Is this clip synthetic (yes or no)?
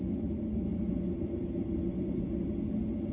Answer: no